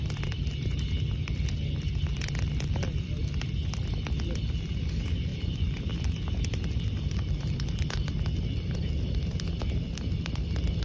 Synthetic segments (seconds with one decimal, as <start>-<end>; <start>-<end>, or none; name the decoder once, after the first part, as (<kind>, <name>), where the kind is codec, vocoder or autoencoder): 2.1-3.5 (vocoder, BigVGAN v2); 5.3-9.2